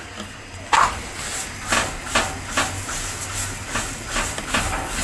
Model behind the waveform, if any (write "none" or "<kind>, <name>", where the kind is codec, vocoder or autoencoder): none